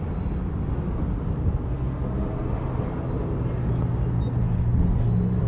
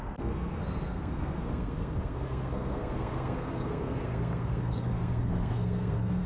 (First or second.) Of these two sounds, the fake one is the second